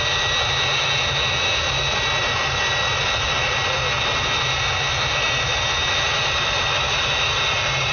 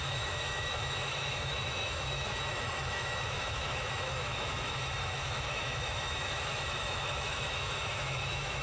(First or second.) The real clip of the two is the first